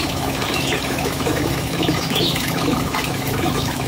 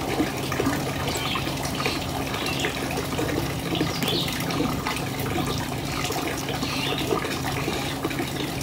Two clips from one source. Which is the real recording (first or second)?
second